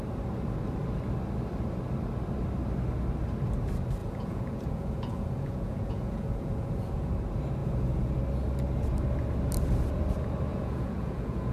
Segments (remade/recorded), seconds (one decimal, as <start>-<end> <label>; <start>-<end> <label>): 0.0-4.0 recorded; 4.0-7.1 remade; 7.1-7.6 recorded; 7.6-8.2 remade; 8.2-10.5 recorded; 10.5-11.5 remade